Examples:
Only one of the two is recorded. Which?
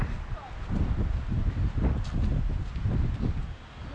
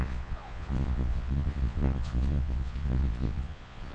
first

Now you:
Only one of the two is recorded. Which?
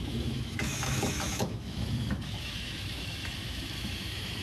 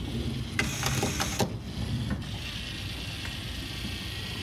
second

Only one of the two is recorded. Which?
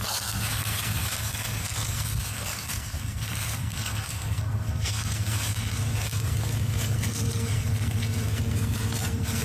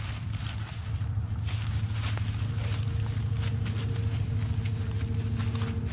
second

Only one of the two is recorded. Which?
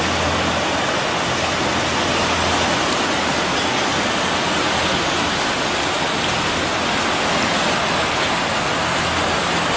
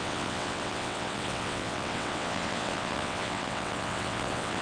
first